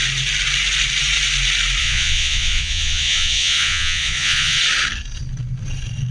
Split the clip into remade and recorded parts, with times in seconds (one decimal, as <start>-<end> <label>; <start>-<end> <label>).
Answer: 0.0-1.8 recorded; 1.8-4.6 remade; 4.6-6.1 recorded